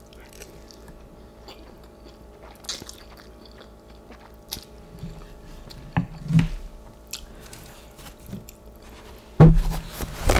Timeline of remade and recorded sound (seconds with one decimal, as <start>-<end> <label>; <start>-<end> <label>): 0.0-10.4 recorded